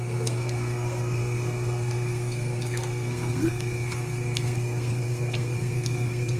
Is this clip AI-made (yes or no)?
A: yes